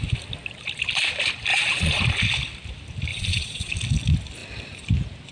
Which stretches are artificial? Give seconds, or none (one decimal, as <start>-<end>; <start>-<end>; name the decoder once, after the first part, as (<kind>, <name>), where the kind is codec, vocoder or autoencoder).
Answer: 1.5-2.0 (vocoder, Vocos); 3.1-3.7